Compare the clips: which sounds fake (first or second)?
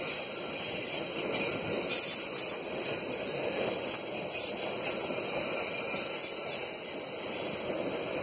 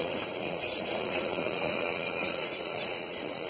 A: second